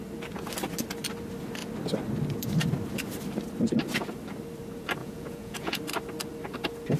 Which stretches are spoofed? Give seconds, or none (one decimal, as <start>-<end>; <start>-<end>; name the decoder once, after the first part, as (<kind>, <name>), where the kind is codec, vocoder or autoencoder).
5.0-5.8 (vocoder, Vocos)